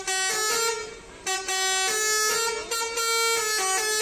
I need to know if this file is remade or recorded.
recorded